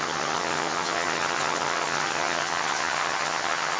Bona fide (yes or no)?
no